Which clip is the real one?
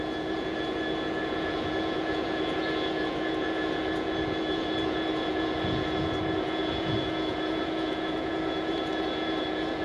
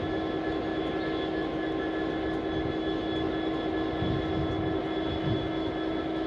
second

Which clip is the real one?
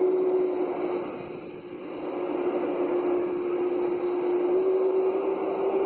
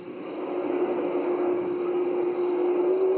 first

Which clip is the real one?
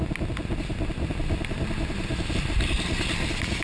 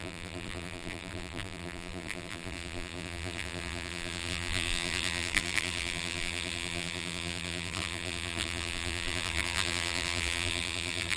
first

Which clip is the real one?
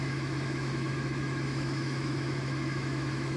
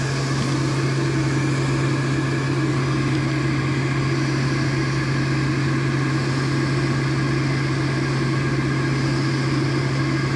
second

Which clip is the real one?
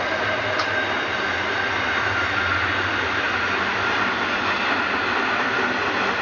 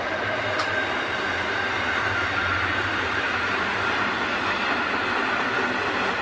first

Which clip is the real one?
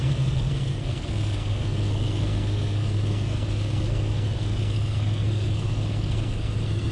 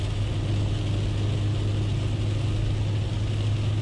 second